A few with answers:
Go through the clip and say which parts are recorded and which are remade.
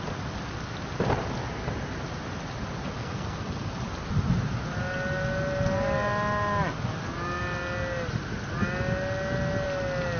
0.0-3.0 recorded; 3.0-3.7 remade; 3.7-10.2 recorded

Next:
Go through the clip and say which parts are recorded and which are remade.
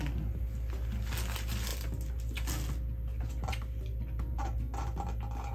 0.0-5.5 recorded